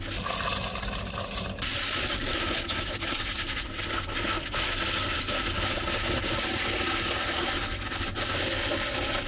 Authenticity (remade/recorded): recorded